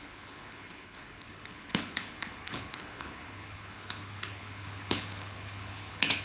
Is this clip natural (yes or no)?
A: no